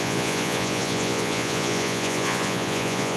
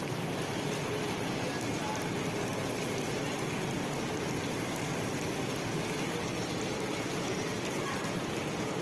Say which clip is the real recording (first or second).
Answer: second